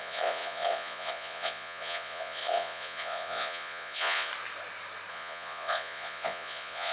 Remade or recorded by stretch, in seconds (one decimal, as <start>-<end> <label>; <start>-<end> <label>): 0.0-4.3 remade; 4.3-5.1 recorded; 5.1-6.9 remade